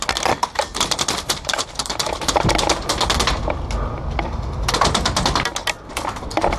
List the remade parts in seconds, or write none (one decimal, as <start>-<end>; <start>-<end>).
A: 0.4-2.1